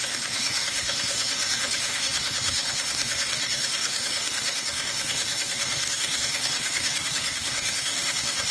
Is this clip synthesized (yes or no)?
yes